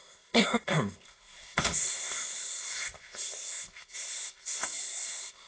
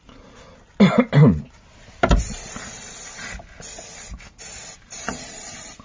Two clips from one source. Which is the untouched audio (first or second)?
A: second